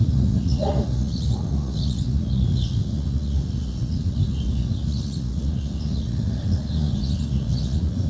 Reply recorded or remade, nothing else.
remade